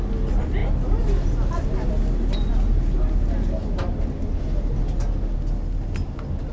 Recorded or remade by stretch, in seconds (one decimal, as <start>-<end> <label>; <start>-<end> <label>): 0.0-6.5 recorded